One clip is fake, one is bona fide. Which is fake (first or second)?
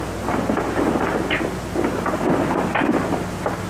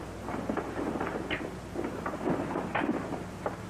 second